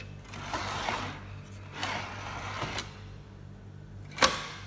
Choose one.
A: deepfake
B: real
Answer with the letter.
B